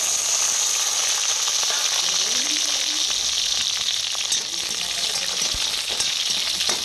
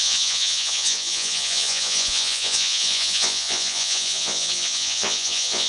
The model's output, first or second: second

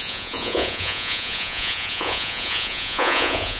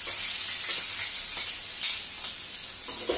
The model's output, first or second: first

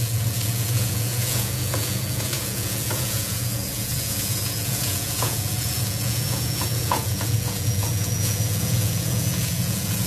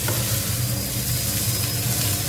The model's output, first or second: first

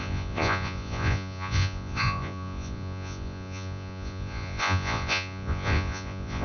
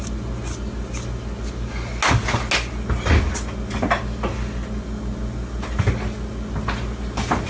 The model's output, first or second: first